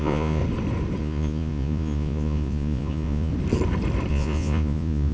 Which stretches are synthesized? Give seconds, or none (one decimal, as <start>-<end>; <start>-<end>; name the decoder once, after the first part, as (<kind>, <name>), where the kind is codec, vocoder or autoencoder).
0.0-0.4 (vocoder, Vocos); 1.0-3.3; 4.1-5.1